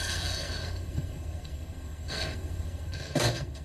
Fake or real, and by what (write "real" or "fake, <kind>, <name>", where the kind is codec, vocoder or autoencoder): fake, codec, SNAC